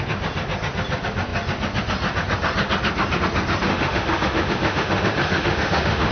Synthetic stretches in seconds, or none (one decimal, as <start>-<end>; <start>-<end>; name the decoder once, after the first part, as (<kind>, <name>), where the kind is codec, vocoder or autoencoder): 3.7-6.1 (autoencoder, DAC-VAE)